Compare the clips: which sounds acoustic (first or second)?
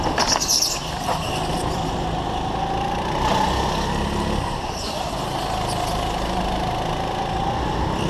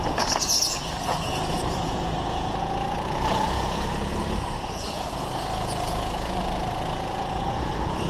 first